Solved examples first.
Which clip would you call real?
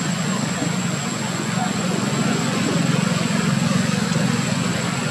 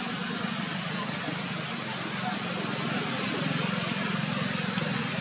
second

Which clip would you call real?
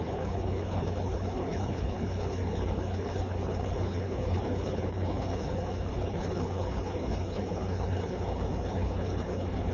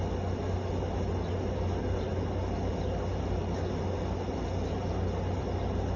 second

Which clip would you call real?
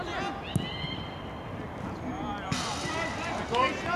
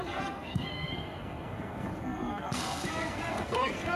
first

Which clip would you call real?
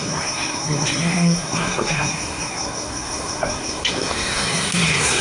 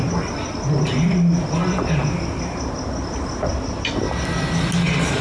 second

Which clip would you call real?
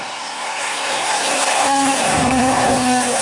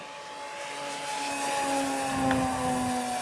second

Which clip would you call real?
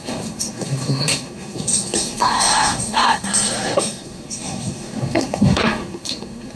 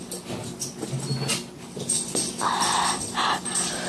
second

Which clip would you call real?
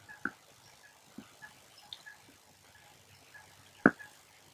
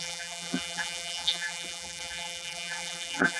first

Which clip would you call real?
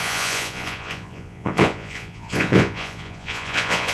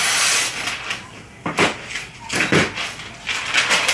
second